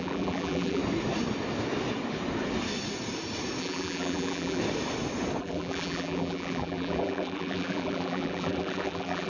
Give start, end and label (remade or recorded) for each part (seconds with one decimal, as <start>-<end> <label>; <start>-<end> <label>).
0.0-0.8 remade; 0.8-3.6 recorded; 3.6-4.6 remade; 4.6-5.4 recorded; 5.4-9.3 remade